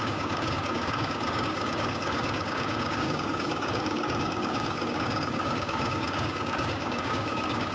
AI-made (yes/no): yes